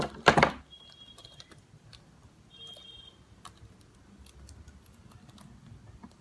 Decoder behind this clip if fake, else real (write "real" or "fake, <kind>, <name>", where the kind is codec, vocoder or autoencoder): real